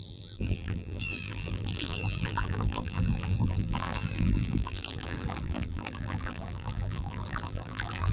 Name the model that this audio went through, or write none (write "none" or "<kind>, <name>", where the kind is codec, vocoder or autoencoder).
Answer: vocoder, BigVGAN v2